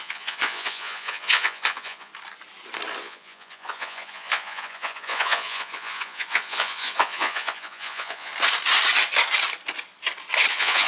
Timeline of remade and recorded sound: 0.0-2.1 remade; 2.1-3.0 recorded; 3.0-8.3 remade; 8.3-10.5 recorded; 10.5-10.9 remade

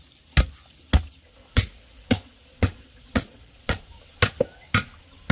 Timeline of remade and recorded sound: 0.0-1.3 recorded; 1.3-4.0 remade; 4.0-5.3 recorded

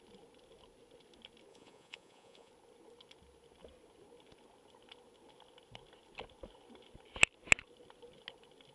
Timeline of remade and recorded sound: 0.0-1.5 recorded; 1.5-2.5 remade; 2.5-8.7 recorded

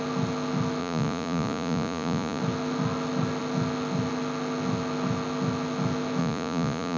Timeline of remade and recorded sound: 0.0-0.8 recorded; 0.8-2.4 remade; 2.4-6.2 recorded; 6.2-7.0 remade

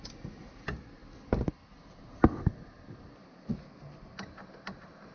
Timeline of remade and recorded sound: 0.0-5.1 recorded

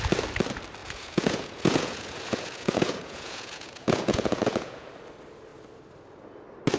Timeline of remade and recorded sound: 0.0-0.8 recorded; 0.8-4.9 remade; 4.9-6.8 recorded